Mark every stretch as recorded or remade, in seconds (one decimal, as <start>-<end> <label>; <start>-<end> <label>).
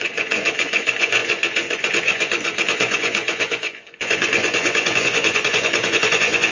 0.0-6.5 remade